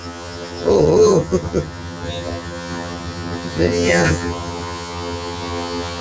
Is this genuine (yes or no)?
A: no